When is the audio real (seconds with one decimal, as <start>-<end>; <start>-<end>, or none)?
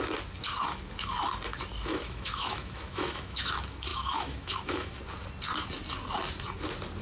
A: 0.0-1.9; 3.5-3.9; 5.0-7.0